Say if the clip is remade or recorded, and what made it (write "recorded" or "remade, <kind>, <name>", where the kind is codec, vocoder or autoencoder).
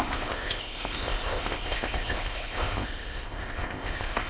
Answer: remade, codec, ZipCodec